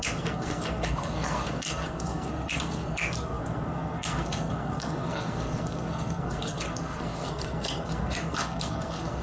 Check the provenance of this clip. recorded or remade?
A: remade